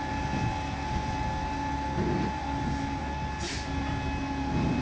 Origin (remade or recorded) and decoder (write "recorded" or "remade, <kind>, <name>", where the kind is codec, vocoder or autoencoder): recorded